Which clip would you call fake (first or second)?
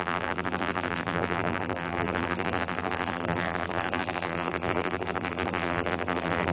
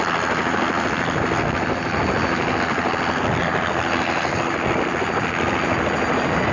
first